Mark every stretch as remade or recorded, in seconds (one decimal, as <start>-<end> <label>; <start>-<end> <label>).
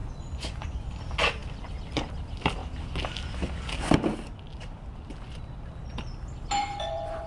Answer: 0.0-0.9 remade; 0.9-6.6 recorded; 6.6-7.3 remade